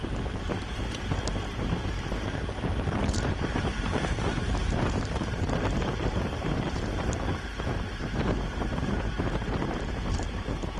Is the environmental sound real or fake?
fake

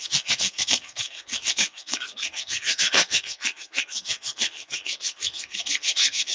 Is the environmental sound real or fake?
fake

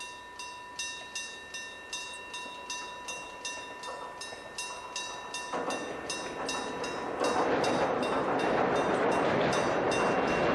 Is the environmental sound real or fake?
real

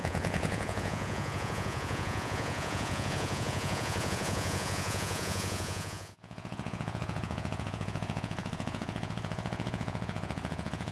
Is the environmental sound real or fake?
fake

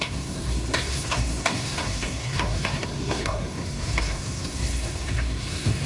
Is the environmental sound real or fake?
fake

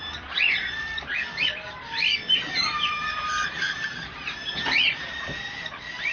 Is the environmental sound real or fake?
fake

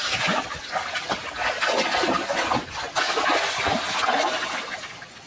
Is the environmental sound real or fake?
real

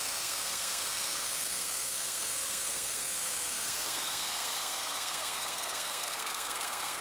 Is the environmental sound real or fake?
fake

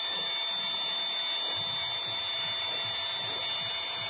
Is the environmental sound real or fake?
real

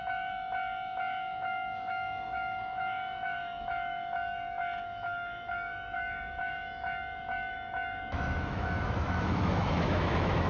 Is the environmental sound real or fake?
fake